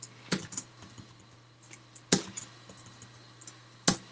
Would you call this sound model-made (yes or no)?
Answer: no